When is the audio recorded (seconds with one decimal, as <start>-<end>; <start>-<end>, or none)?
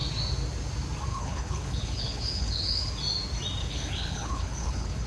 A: 0.0-1.1; 2.9-3.6